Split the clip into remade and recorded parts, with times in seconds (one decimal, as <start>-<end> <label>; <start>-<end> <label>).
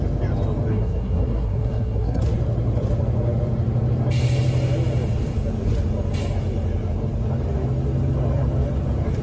0.0-0.7 recorded; 0.7-2.2 remade; 2.2-9.2 recorded